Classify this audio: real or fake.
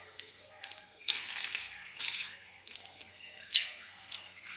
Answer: fake